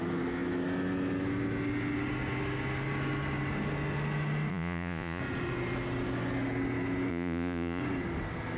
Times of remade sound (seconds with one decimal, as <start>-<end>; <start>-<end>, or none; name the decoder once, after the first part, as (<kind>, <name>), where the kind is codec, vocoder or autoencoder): 4.5-5.2 (vocoder, Vocos); 7.1-7.8